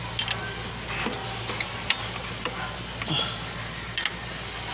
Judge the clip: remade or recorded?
recorded